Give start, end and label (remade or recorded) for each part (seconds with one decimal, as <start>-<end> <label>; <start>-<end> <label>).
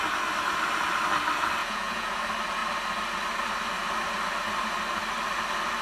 0.0-1.6 recorded; 1.6-2.2 remade; 2.2-5.8 recorded